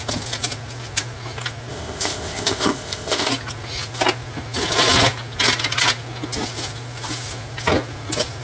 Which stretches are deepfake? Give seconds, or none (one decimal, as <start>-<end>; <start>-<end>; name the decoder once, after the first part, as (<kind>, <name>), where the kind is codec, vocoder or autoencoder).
1.7-3.3 (codec, ZipCodec)